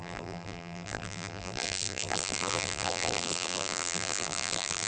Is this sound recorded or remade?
remade